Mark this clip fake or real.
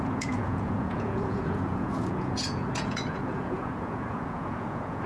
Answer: fake